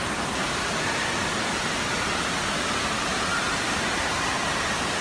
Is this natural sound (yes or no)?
yes